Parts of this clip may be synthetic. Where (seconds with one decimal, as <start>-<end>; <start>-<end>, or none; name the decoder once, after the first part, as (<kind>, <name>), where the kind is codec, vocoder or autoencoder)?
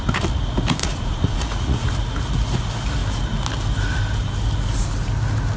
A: 0.8-1.9 (vocoder, Vocos)